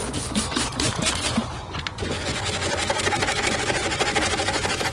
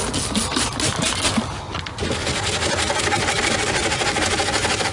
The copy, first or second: first